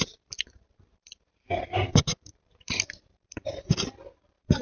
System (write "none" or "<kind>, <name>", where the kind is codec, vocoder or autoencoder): vocoder, BigVGAN v2